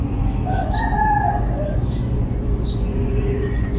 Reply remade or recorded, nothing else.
remade